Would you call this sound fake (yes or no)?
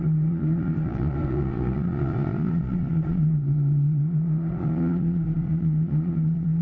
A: yes